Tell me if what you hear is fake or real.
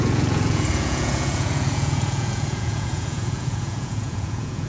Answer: fake